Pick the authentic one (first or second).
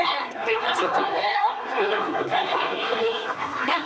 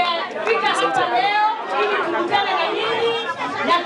second